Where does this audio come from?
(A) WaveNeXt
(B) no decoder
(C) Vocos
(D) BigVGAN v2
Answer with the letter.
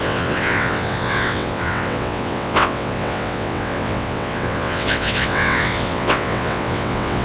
A